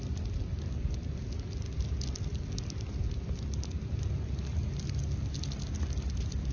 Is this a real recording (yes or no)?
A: yes